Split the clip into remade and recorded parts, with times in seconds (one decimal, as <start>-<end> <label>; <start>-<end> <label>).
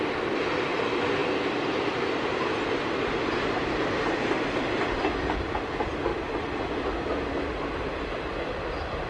0.0-9.1 recorded